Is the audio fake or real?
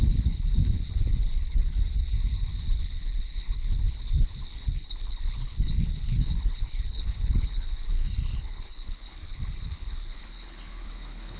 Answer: fake